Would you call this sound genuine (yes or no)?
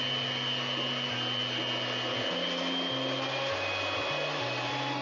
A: yes